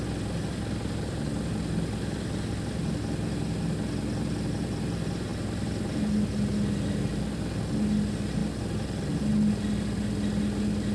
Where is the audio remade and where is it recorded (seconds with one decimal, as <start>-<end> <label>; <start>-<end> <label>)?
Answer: 0.0-10.9 recorded